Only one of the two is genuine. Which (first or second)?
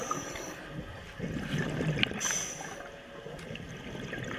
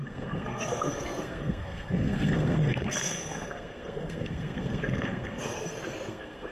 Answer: first